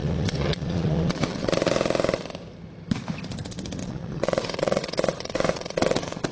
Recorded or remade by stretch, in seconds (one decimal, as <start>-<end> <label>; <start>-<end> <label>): 0.0-1.5 remade; 1.5-3.8 recorded; 3.8-6.3 remade